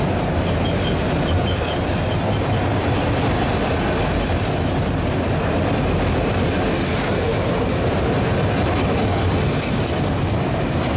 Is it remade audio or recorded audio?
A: recorded